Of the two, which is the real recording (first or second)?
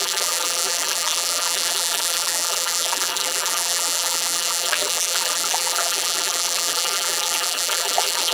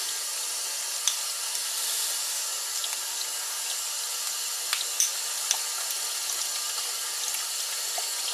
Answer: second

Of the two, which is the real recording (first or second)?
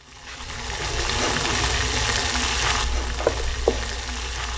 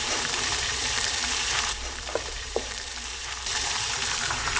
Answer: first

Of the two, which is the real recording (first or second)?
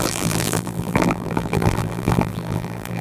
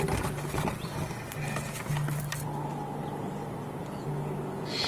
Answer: second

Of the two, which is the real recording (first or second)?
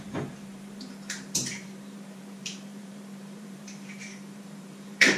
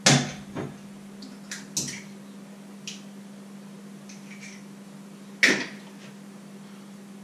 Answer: second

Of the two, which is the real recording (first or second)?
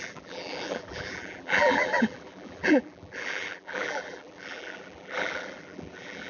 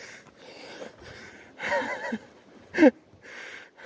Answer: second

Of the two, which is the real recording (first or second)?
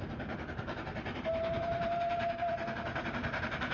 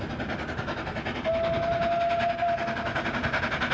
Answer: second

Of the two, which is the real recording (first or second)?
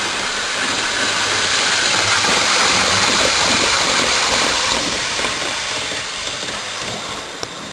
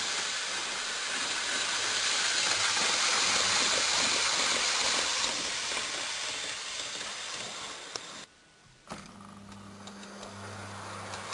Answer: second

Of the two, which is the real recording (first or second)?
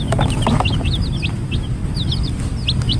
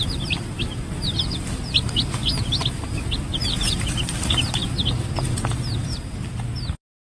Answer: first